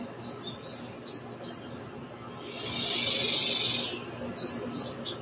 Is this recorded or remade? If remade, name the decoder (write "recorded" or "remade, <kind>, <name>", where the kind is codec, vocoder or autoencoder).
recorded